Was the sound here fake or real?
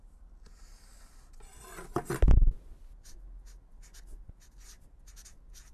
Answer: real